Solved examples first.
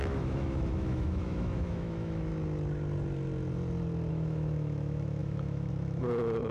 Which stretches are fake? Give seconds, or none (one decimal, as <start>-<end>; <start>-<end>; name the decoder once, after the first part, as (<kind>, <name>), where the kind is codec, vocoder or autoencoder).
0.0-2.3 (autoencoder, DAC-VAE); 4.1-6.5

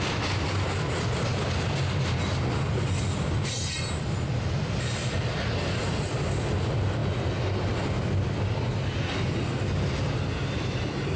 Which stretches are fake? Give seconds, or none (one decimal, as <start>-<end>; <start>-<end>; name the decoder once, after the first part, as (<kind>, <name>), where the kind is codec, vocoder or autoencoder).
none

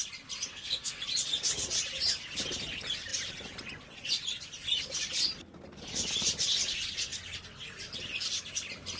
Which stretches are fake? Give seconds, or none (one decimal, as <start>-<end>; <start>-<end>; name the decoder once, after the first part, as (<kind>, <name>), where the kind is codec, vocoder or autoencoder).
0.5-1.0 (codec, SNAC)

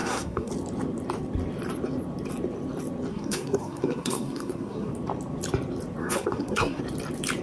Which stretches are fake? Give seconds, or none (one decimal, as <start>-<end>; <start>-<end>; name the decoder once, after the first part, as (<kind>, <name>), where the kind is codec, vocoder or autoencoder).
0.0-0.5 (codec, SNAC); 3.1-4.9; 6.0-6.8

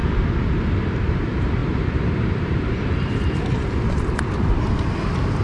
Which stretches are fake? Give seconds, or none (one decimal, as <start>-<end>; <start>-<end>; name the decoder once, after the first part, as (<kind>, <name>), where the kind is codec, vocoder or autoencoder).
1.1-5.4 (vocoder, BigVGAN v2)

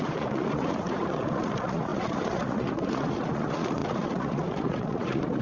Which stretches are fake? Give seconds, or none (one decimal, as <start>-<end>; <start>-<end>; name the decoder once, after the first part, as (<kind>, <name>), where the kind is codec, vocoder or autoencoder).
0.0-5.4 (vocoder, Vocos)